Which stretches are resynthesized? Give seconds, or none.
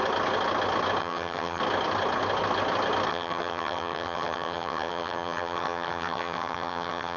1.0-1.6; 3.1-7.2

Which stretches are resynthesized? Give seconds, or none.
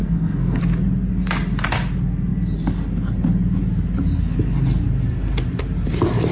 0.0-0.6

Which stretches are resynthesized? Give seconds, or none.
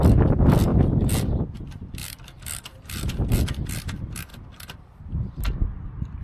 none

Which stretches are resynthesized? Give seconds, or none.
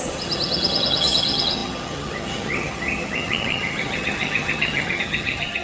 0.0-5.6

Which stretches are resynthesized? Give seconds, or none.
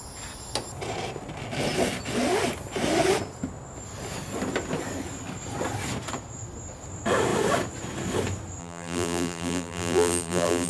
8.6-10.7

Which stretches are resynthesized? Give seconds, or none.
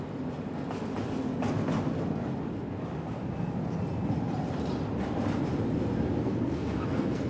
6.2-7.3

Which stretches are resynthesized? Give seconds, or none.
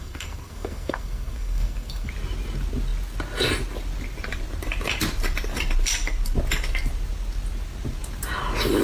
0.0-2.1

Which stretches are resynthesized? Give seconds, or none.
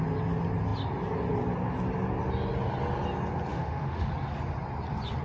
3.5-4.1